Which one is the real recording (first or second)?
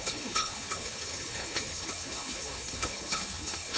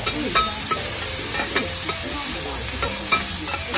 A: second